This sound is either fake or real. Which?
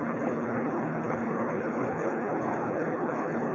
fake